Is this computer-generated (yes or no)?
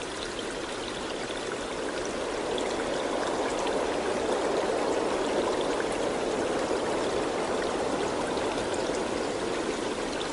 no